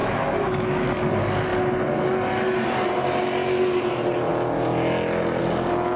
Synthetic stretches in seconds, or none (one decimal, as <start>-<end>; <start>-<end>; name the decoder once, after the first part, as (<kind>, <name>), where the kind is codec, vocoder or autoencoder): 0.0-1.1 (autoencoder, DAC-VAE)